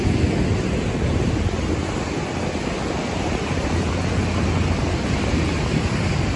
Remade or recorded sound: recorded